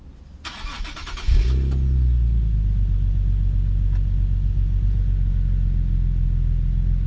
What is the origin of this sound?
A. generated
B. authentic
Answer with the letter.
B